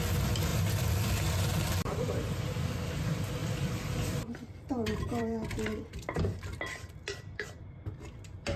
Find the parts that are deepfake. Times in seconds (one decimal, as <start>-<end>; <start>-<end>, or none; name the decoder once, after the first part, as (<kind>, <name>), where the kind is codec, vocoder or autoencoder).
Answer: 0.5-2.1 (vocoder, BigVGAN v2); 3.4-8.6